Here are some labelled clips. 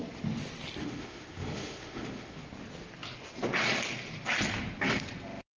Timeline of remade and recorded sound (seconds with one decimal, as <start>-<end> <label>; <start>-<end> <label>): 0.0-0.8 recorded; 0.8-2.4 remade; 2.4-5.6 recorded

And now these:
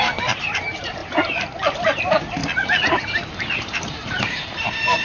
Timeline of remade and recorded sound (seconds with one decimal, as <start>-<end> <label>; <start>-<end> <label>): 0.0-1.0 remade; 1.0-2.0 recorded; 2.0-2.4 remade; 2.4-3.3 recorded; 3.3-5.0 remade

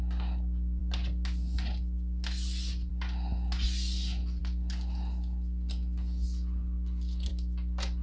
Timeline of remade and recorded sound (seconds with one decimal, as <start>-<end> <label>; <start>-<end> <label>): 0.0-8.0 recorded